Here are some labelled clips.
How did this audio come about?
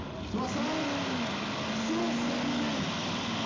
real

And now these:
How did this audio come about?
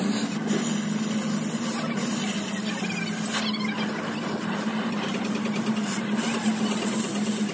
real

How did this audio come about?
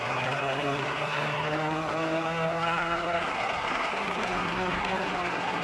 fake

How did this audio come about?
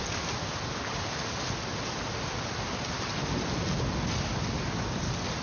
real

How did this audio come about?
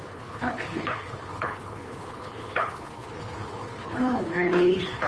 fake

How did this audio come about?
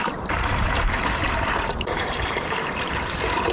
fake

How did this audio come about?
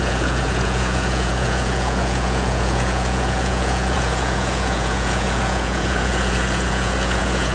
fake